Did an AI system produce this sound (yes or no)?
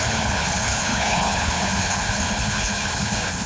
yes